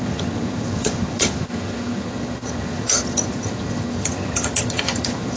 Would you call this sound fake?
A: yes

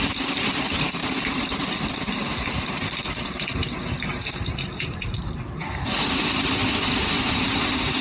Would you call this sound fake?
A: no